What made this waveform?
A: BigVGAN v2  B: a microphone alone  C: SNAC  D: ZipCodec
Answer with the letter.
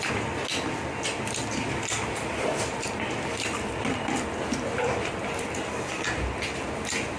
B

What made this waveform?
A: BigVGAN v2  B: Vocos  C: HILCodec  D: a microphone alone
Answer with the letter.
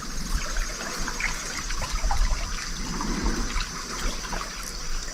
D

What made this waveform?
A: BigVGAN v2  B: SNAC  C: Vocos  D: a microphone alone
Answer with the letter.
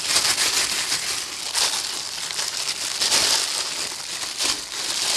D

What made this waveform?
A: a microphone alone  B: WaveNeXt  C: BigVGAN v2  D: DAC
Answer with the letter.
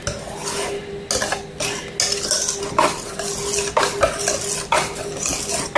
A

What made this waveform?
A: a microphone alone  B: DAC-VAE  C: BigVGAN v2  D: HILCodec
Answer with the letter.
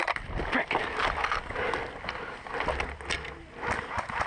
A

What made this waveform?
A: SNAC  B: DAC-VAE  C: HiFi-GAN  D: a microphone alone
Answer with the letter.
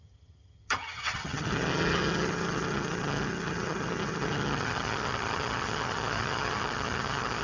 C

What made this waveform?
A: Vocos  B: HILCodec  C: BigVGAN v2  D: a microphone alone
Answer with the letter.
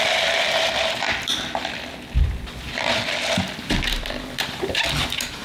C